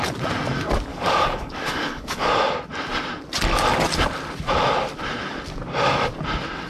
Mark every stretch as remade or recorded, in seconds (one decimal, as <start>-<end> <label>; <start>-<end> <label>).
0.0-0.9 recorded; 0.9-2.3 remade; 2.3-6.7 recorded